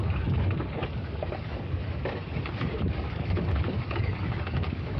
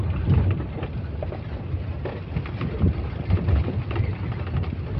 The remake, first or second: first